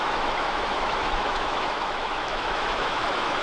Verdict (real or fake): fake